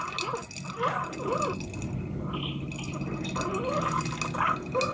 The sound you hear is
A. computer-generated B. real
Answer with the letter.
B